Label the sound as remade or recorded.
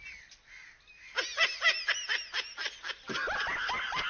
recorded